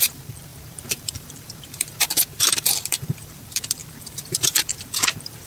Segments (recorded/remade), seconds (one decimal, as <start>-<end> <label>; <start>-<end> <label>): 0.0-5.5 remade